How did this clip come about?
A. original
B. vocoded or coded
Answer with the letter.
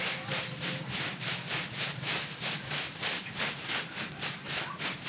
A